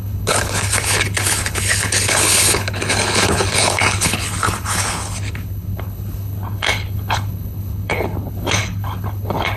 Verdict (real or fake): fake